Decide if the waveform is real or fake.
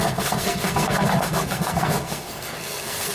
fake